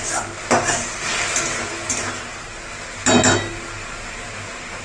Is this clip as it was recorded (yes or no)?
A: yes